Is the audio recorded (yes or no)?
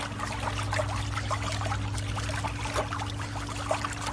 yes